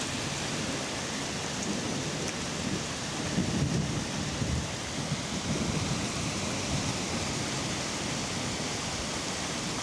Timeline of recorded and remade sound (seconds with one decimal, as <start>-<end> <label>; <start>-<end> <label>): 0.0-9.8 recorded